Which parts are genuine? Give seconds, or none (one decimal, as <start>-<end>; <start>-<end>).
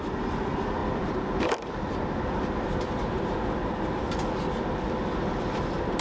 0.0-0.8; 4.4-6.0